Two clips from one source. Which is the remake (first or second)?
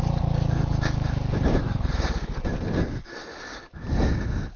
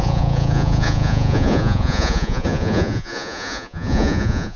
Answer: second